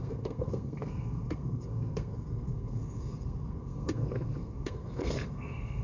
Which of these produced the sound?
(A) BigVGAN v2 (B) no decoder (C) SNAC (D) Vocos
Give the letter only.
C